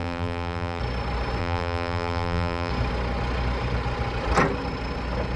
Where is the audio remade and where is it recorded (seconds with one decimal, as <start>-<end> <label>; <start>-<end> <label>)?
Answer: 0.0-0.8 remade; 0.8-1.4 recorded; 1.4-2.7 remade; 2.7-5.4 recorded